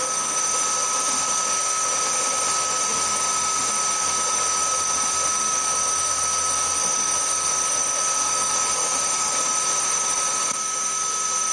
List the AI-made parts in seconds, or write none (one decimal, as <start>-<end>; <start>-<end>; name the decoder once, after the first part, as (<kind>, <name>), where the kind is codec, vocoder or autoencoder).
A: 0.0-11.5 (autoencoder, DAC-VAE)